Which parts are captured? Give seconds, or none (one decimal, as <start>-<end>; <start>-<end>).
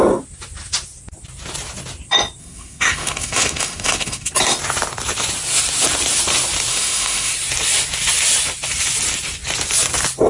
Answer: 0.0-2.4; 4.3-6.7; 7.3-10.3